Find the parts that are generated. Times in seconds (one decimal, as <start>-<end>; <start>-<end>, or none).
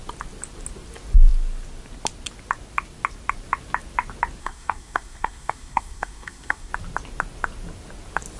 4.4-6.7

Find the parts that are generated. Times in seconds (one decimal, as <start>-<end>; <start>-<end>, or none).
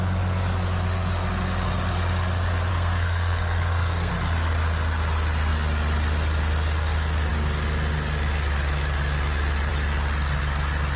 2.7-4.1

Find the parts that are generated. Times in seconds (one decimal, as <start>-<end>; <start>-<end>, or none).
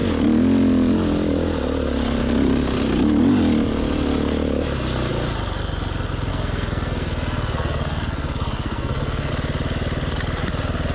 6.3-9.3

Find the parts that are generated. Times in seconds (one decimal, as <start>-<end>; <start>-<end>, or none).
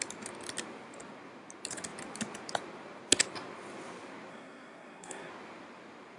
4.3-5.3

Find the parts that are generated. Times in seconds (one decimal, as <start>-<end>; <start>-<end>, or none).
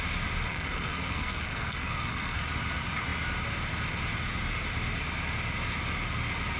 0.5-2.4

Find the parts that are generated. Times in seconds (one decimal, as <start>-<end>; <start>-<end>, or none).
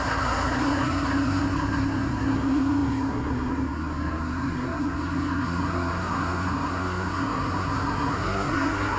0.0-9.0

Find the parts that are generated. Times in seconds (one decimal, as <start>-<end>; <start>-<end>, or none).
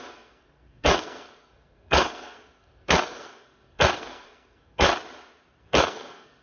0.0-4.9; 5.6-6.4